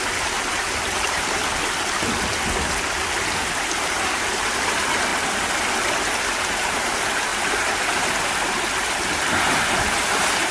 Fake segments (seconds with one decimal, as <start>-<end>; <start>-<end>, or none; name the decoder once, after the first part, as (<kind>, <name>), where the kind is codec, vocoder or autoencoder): 0.0-1.4 (vocoder, BigVGAN v2); 3.9-5.1; 6.5-7.3; 9.8-10.5